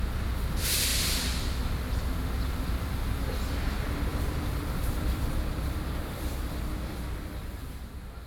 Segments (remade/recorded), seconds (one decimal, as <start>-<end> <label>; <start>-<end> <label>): 0.0-4.1 recorded; 4.1-7.4 remade; 7.4-8.3 recorded